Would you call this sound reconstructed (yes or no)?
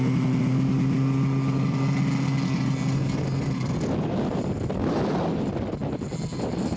no